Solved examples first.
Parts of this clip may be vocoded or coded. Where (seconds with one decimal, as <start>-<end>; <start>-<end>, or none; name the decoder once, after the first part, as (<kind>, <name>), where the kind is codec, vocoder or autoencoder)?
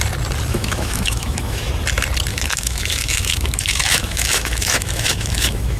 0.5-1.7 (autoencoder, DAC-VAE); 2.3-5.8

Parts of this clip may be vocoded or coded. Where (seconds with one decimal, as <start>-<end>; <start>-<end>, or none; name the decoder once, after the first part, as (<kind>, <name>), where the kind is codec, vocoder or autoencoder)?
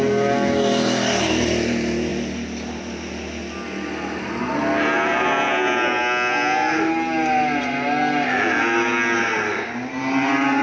none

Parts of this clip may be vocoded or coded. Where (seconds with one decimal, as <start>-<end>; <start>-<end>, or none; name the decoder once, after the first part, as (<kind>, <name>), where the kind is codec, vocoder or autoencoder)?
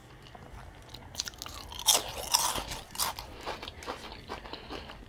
none